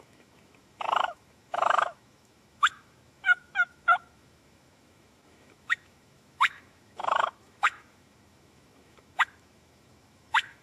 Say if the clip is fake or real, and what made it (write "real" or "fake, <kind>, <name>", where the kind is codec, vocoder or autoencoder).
fake, autoencoder, DAC-VAE